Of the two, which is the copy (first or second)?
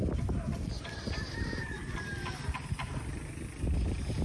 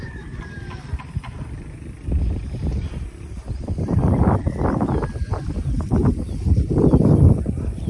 second